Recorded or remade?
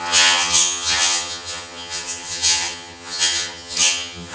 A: remade